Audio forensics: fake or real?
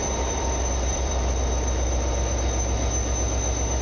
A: fake